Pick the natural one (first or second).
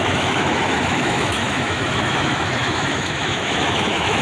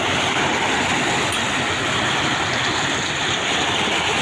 second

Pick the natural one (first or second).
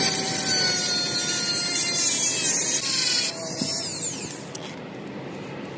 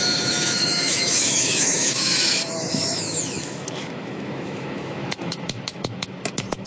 first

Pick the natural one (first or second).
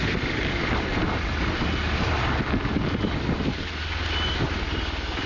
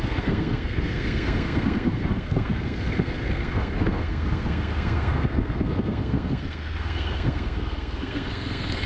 first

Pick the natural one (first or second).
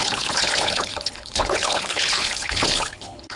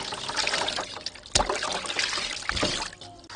second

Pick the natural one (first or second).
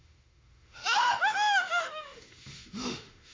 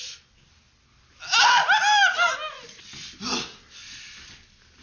second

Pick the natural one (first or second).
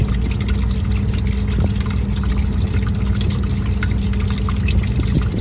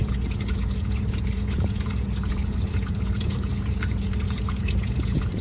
first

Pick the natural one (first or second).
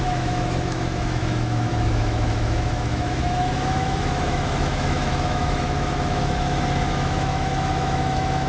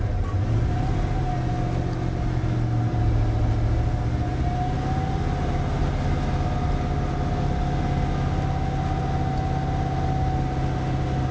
second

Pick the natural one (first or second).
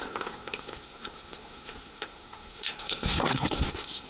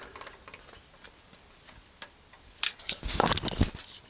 second